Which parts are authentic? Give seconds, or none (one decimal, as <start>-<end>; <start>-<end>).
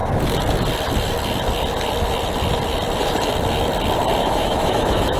0.0-4.2